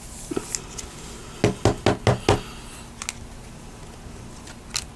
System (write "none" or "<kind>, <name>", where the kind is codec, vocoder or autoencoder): none